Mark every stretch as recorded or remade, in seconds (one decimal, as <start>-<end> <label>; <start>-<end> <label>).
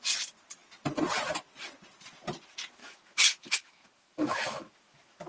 0.0-2.8 recorded; 2.8-5.3 remade